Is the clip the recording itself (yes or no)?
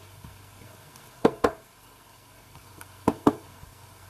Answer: no